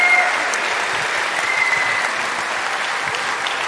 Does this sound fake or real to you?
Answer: real